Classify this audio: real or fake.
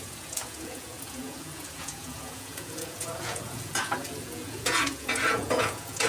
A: fake